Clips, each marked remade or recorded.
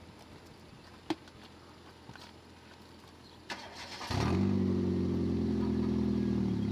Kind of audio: recorded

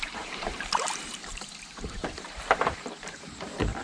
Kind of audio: remade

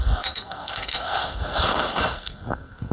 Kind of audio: remade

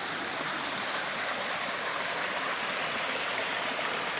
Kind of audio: recorded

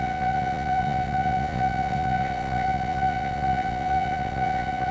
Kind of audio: remade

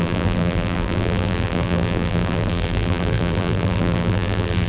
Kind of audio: remade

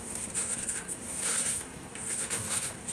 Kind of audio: remade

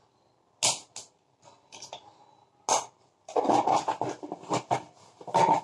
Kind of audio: recorded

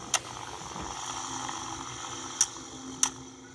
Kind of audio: recorded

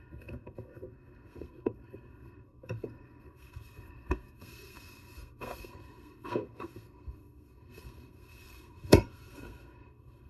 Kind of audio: remade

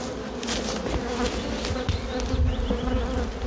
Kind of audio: recorded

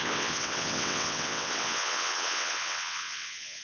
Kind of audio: remade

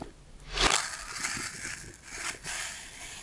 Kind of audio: recorded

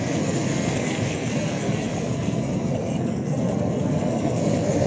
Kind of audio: remade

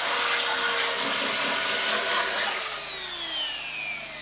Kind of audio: recorded